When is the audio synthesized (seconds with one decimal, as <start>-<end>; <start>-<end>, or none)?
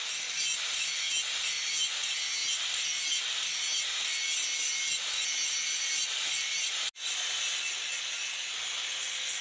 none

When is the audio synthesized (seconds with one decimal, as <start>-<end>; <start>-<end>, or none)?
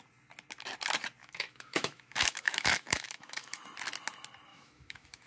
1.2-3.6; 4.5-5.3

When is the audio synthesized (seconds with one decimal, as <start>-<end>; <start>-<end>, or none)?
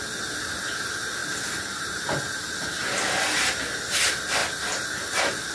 none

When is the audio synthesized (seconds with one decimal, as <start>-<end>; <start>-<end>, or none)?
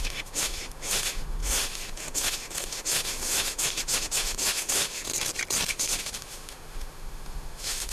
0.0-5.1; 5.7-7.9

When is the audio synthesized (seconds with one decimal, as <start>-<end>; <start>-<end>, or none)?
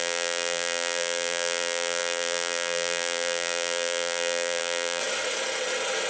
0.0-5.0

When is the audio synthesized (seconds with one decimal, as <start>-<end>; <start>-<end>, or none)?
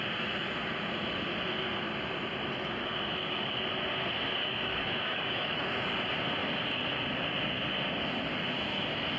3.2-3.7; 4.4-5.7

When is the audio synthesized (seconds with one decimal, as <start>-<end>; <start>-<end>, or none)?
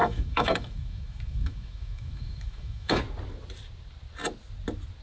0.0-3.0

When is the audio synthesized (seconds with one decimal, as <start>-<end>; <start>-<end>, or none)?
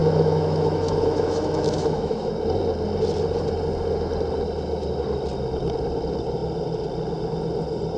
0.0-2.3